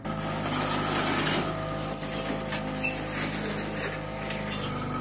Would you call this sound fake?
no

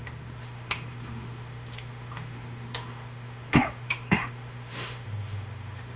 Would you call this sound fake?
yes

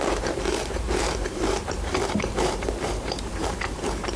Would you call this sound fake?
yes